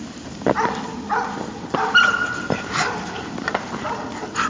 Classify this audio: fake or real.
real